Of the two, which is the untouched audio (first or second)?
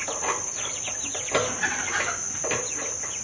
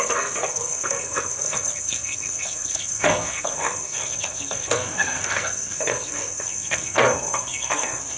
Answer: first